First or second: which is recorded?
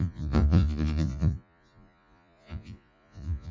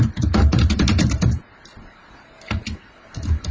second